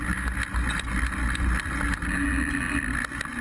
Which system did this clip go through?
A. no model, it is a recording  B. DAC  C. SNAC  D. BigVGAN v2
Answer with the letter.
A